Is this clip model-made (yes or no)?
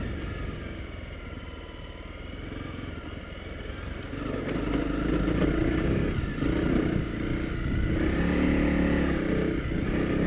no